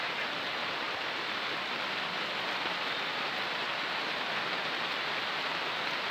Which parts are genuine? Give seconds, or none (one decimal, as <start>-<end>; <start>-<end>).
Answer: 0.0-6.1